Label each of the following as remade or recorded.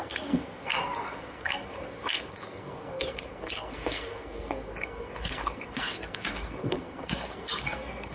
remade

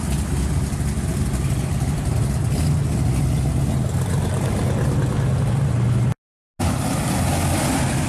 recorded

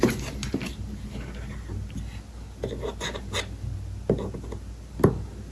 recorded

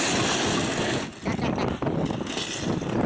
recorded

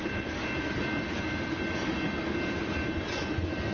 recorded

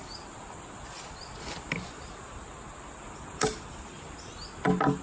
recorded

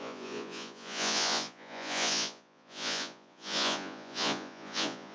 remade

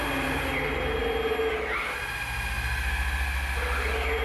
recorded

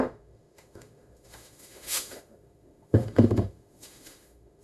remade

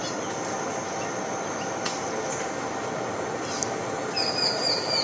recorded